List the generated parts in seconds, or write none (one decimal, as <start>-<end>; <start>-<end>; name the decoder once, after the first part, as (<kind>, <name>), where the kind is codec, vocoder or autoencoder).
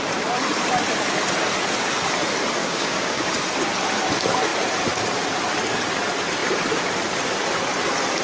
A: 2.6-3.3 (codec, DAC)